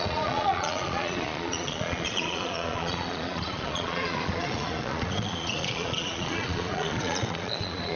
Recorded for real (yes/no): no